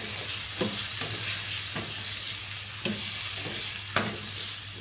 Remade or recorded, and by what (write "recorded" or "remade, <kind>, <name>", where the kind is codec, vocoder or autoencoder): recorded